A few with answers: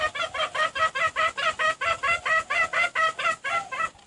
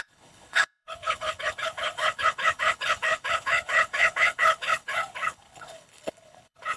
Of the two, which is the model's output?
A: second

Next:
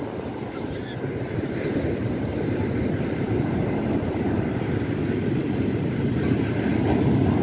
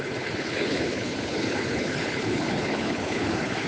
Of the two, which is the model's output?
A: second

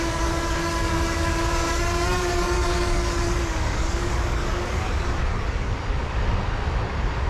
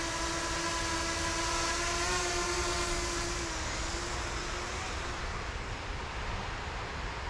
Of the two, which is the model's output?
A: first